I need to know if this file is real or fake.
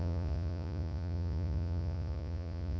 fake